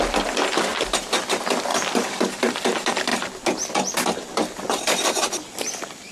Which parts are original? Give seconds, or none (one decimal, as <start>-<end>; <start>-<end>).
0.0-1.7; 2.2-3.1

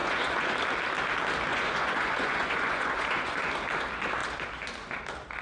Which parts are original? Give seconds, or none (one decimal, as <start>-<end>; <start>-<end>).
0.5-1.5; 3.5-5.4

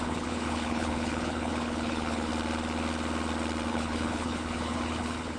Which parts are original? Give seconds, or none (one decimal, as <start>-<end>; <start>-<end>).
2.3-3.7

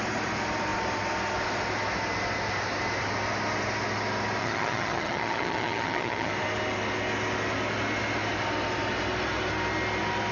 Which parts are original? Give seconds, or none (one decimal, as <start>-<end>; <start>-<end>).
0.0-4.4; 6.3-10.3

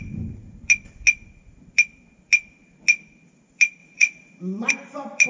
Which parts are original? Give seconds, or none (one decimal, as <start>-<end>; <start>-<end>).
0.0-3.8; 4.7-5.3